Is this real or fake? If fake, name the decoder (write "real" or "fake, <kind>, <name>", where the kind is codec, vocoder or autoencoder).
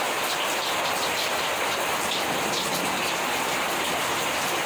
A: real